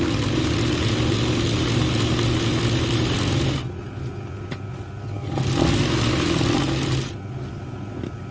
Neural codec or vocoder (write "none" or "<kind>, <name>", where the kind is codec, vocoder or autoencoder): none